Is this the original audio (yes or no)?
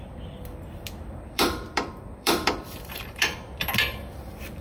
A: no